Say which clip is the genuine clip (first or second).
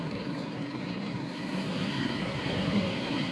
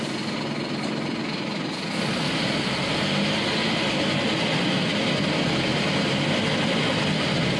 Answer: second